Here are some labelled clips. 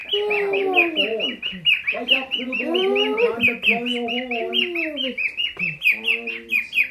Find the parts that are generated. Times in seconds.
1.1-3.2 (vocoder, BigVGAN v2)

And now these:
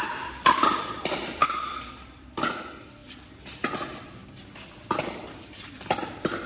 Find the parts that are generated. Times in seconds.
0.0-3.0 (vocoder, BigVGAN v2); 3.7-4.2; 6.1-6.5

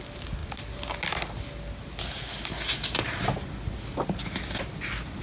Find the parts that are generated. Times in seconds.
none

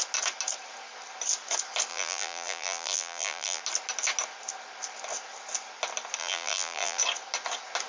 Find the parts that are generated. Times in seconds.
1.9-3.6 (vocoder, BigVGAN v2); 6.2-7.0

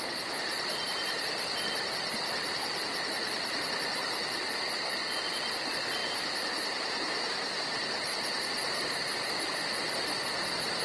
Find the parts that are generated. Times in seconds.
6.0-9.4 (vocoder, BigVGAN v2)

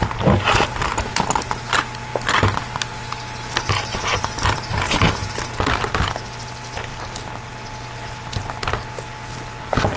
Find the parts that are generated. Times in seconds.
6.9-7.5 (vocoder, BigVGAN v2)

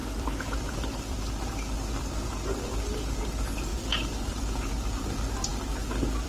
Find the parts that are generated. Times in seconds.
0.0-2.0 (vocoder, BigVGAN v2); 3.7-4.7; 5.5-6.3